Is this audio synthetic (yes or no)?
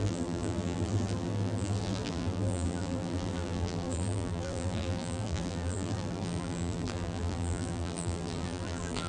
yes